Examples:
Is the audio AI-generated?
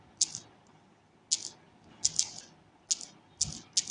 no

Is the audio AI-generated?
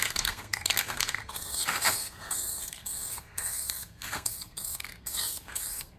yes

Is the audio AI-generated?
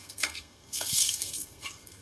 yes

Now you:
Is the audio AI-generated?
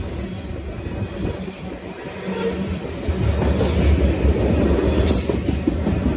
no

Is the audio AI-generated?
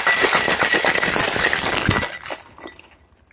no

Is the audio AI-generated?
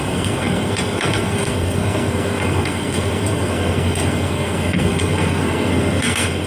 yes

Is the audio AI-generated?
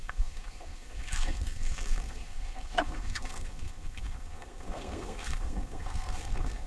yes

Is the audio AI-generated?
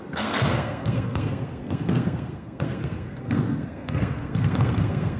yes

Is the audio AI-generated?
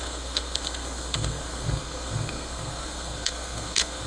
yes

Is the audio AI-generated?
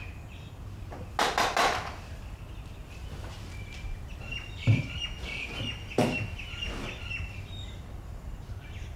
no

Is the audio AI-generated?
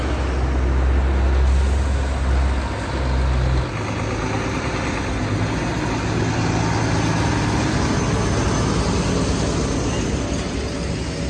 no